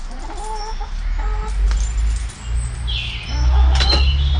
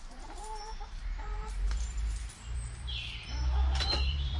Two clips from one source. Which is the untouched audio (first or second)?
first